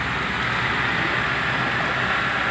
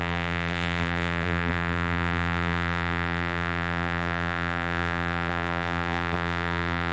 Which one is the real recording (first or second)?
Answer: first